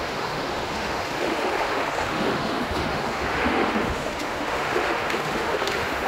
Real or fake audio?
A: fake